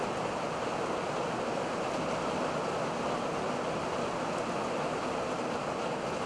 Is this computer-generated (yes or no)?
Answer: no